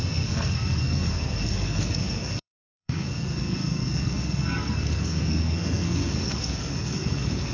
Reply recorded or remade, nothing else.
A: remade